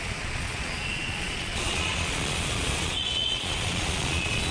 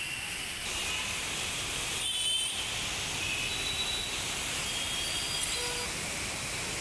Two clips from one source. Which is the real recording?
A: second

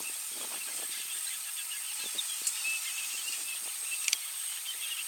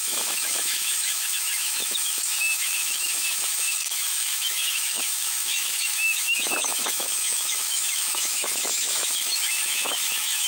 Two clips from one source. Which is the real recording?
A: first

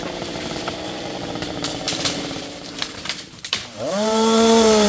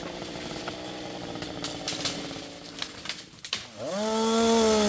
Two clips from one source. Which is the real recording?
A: second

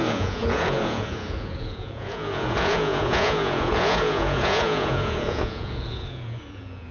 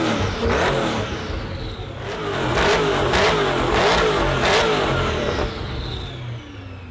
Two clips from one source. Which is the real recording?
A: second